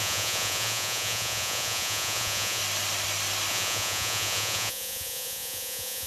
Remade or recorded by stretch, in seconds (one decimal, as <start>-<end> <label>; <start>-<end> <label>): 0.0-2.6 remade; 2.6-3.5 recorded; 3.5-6.1 remade